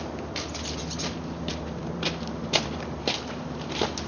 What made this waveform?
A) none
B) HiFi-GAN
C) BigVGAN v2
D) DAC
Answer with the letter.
C